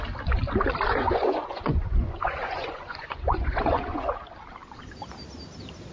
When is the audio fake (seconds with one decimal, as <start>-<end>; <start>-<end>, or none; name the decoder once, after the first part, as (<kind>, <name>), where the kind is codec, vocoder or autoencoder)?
0.9-4.1 (vocoder, Vocos)